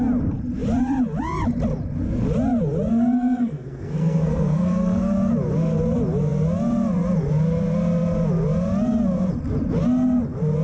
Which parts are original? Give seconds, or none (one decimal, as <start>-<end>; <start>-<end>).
0.0-2.9; 5.1-10.6